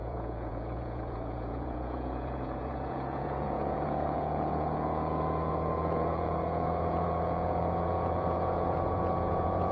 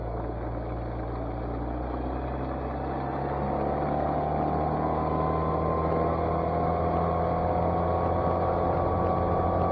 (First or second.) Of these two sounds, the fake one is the first